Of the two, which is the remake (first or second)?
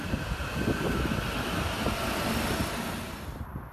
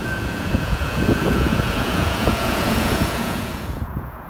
second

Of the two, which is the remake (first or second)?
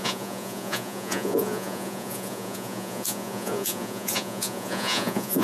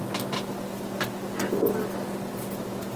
first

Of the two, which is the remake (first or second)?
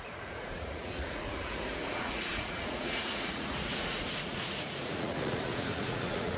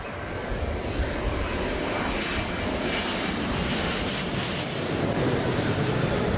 first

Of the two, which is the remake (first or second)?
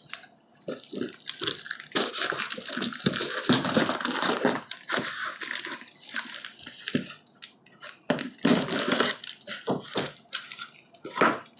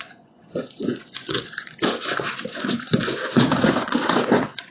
second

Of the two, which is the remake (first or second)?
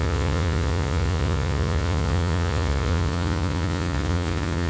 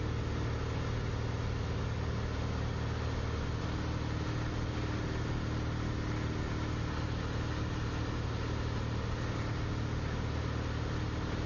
first